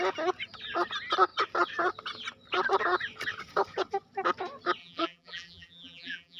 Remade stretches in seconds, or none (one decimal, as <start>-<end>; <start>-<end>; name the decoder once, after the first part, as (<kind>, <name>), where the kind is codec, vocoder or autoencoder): 4.8-6.4 (vocoder, BigVGAN v2)